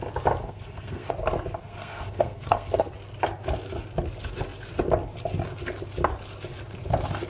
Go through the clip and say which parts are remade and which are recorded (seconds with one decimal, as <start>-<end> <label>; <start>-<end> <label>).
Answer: 0.0-0.4 recorded; 0.4-1.1 remade; 1.1-1.6 recorded; 1.6-2.9 remade; 2.9-7.3 recorded